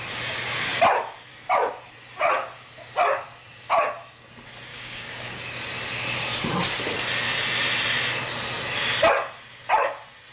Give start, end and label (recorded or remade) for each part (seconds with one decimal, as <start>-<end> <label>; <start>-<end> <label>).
0.0-4.7 recorded; 4.7-5.4 remade; 5.4-10.3 recorded